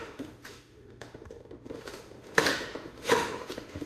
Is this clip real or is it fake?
fake